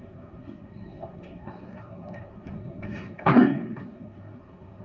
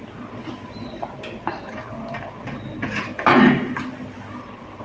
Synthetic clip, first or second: first